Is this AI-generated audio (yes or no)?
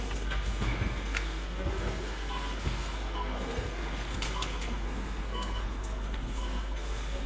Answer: yes